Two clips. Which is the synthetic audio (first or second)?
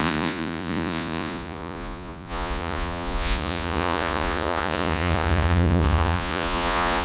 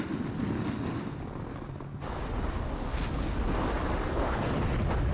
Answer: first